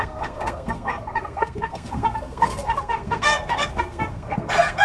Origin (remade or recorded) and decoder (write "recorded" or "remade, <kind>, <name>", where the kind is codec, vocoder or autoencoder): remade, codec, SNAC